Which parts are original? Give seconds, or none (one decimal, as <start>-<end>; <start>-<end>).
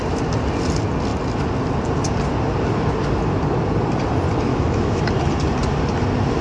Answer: 0.0-4.5; 5.0-6.4